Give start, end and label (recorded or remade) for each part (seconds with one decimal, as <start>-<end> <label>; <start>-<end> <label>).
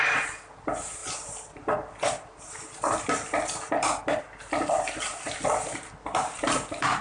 0.0-1.0 remade; 1.0-4.2 recorded; 4.2-5.1 remade; 5.1-6.1 recorded; 6.1-7.0 remade